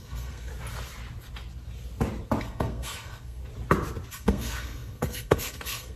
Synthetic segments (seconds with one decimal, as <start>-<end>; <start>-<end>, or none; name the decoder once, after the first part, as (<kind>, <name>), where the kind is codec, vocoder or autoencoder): 0.0-0.5 (codec, SNAC); 2.4-3.4; 4.1-6.0